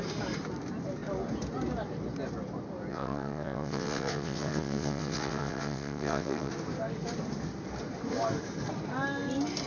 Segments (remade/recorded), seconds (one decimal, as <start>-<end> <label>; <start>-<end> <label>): 0.0-2.9 recorded; 2.9-6.5 remade; 6.5-9.7 recorded

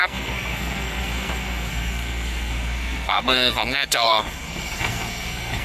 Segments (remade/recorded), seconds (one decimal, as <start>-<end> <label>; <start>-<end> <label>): 0.0-5.6 remade

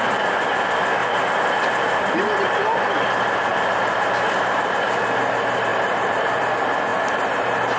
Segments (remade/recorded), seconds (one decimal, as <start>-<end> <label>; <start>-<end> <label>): 0.0-1.0 recorded; 1.0-1.5 remade; 1.5-3.5 recorded; 3.5-4.6 remade; 4.6-5.7 recorded; 5.7-6.4 remade; 6.4-6.9 recorded; 6.9-7.8 remade

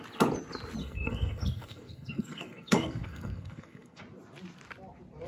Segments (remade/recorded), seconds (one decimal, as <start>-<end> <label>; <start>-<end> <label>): 0.0-0.8 recorded; 0.8-4.0 remade; 4.0-5.3 recorded